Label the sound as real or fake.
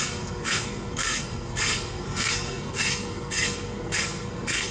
fake